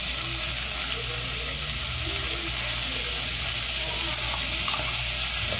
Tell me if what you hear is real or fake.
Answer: real